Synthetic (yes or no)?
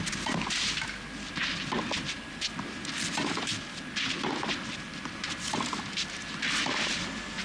no